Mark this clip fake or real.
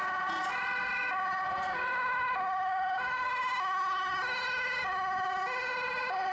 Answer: real